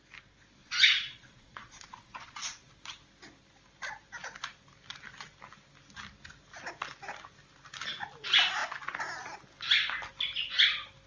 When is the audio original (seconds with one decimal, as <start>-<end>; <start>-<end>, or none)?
0.0-0.6; 2.7-11.1